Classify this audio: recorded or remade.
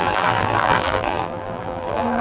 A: remade